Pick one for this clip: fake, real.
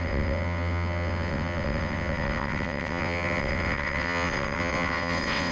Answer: fake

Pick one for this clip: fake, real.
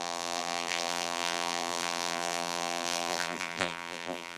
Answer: fake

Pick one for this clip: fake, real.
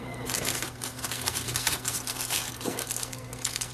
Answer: fake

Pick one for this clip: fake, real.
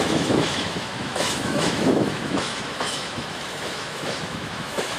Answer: fake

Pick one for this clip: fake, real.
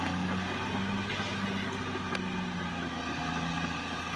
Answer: real